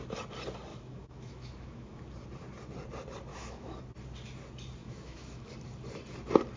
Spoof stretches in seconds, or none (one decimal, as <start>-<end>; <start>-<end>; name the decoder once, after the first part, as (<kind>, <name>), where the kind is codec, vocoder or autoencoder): 0.7-2.0 (autoencoder, DAC-VAE); 3.3-3.8; 4.8-5.5